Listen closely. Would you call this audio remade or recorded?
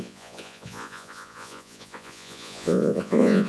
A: remade